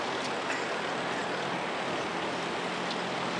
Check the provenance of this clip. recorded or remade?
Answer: recorded